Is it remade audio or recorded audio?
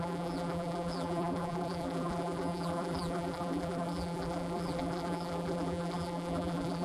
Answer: remade